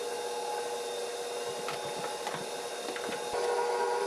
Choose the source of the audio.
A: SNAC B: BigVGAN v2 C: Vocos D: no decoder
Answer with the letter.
D